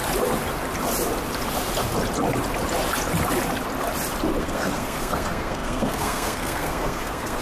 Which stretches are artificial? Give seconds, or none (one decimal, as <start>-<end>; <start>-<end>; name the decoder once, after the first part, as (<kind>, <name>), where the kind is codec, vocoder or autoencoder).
4.4-7.4 (codec, SNAC)